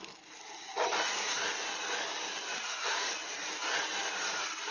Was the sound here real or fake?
real